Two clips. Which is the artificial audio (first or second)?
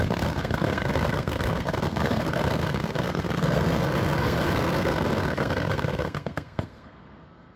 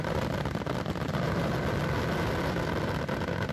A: first